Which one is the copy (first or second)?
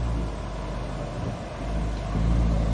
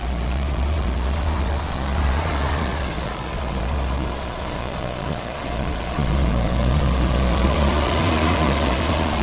second